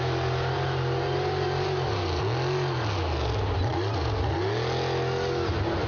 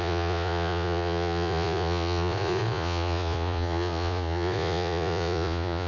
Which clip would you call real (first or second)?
first